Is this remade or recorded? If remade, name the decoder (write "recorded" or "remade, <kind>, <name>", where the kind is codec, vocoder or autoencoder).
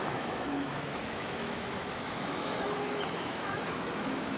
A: remade, autoencoder, DAC-VAE